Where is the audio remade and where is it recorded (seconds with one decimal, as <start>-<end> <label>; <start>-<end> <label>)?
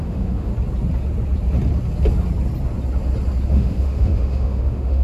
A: 0.0-0.5 remade; 0.5-3.5 recorded; 3.5-5.0 remade